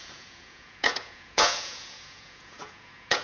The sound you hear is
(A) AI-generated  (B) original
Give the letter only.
A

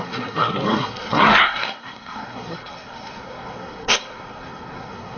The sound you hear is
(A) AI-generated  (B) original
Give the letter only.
A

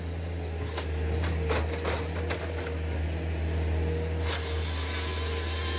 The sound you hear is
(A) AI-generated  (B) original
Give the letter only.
B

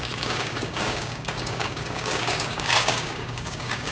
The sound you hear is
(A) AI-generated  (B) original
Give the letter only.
A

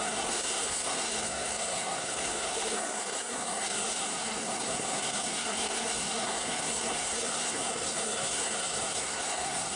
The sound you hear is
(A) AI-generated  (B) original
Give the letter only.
A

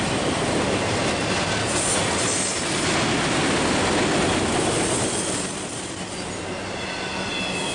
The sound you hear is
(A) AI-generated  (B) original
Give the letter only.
B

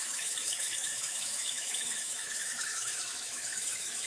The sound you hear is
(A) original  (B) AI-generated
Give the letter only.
B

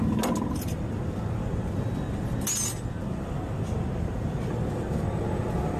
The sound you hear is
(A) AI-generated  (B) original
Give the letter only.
B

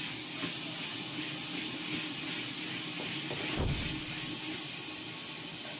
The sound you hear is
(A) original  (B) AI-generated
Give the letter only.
A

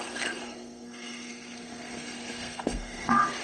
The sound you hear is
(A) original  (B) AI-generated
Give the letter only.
B